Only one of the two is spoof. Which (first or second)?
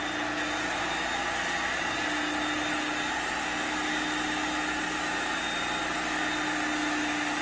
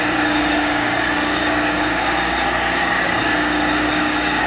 second